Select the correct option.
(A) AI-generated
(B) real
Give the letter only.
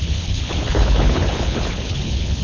A